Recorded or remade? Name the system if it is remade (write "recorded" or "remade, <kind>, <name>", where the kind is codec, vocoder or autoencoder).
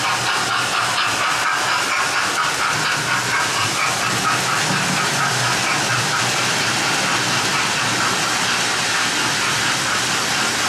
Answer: recorded